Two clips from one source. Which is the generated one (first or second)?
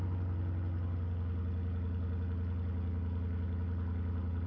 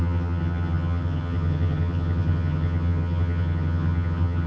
second